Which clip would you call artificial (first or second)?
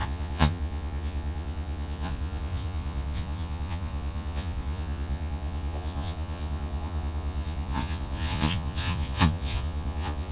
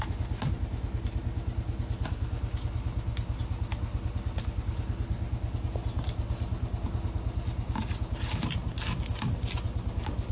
first